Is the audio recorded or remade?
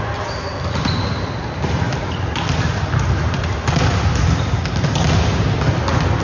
recorded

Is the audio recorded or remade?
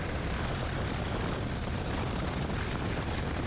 recorded